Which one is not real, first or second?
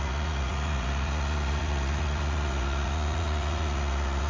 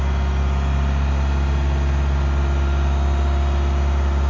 first